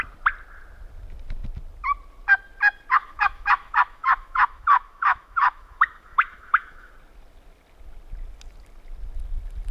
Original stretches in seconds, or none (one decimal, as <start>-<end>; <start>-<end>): 0.0-3.0; 6.9-9.7